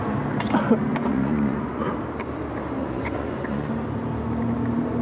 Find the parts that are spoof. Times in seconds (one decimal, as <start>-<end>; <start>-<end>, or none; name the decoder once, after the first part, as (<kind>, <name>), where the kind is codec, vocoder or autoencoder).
0.9-1.9 (vocoder, Vocos); 2.8-3.7